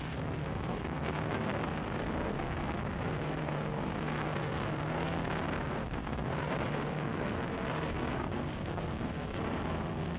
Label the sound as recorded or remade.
remade